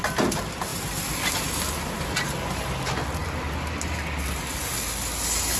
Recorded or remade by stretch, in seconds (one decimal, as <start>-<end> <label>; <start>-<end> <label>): 0.0-5.6 recorded